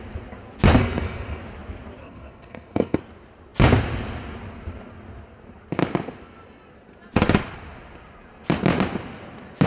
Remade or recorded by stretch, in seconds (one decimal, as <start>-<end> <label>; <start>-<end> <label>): 0.0-0.8 recorded; 0.8-1.4 remade; 1.4-2.0 recorded; 2.0-3.0 remade; 3.0-9.7 recorded